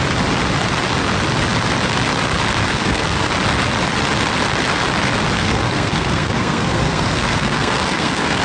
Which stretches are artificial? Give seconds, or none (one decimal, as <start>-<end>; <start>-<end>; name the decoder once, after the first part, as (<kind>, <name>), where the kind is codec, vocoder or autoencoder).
2.7-3.3 (codec, SNAC); 5.4-8.4